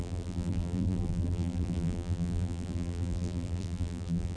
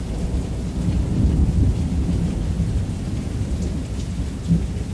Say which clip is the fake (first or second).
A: first